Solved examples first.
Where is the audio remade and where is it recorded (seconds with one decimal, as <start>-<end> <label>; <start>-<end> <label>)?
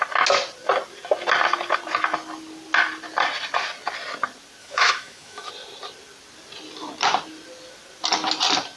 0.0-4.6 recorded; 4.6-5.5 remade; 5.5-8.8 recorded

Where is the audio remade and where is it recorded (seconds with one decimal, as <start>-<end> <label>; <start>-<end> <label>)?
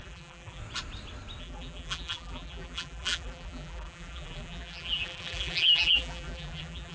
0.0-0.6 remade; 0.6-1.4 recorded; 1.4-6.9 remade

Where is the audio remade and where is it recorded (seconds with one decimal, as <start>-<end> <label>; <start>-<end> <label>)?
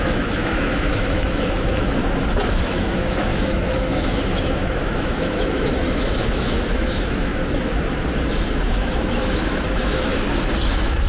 0.0-2.0 remade; 2.0-2.5 recorded; 2.5-7.3 remade; 7.3-8.7 recorded; 8.7-10.1 remade; 10.1-10.7 recorded; 10.7-11.1 remade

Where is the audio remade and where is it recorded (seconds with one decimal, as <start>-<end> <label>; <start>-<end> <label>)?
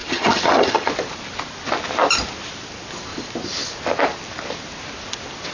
0.0-0.9 remade; 0.9-5.5 recorded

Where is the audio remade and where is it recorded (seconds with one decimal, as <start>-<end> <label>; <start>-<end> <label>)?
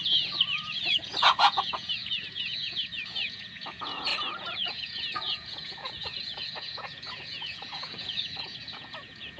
0.0-9.4 remade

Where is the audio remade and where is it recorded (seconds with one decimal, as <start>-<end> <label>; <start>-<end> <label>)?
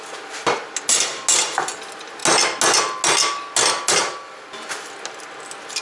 0.0-5.8 recorded